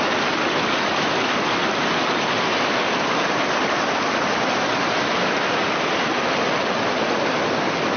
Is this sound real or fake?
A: real